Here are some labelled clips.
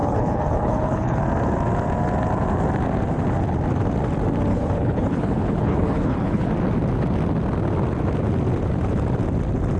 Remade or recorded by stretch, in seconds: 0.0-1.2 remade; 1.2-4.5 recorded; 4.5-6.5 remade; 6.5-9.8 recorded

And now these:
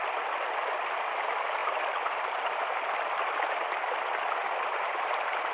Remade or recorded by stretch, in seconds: 0.0-5.5 recorded

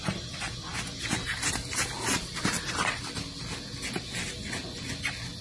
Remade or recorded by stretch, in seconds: 0.0-5.4 recorded

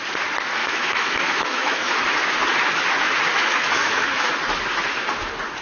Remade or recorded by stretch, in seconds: 0.0-0.6 recorded; 0.6-1.9 remade; 1.9-3.3 recorded; 3.3-4.3 remade; 4.3-5.6 recorded

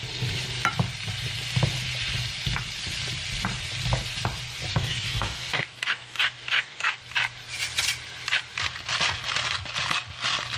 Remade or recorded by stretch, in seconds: 0.0-4.7 recorded; 4.7-7.0 remade; 7.0-10.6 recorded

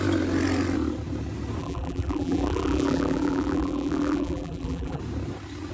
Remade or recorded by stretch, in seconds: 0.0-1.6 recorded; 1.6-5.0 remade; 5.0-5.7 recorded

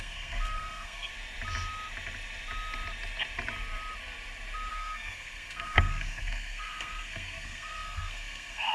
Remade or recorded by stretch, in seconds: 0.0-1.1 remade; 1.1-4.7 recorded; 4.7-8.7 remade

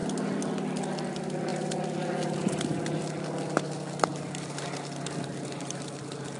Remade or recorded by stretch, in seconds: 0.0-4.1 recorded; 4.1-4.7 remade; 4.7-6.4 recorded